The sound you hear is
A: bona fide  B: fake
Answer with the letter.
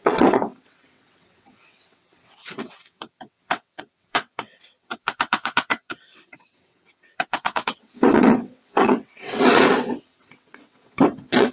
B